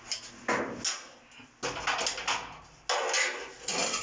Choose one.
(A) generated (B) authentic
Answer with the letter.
B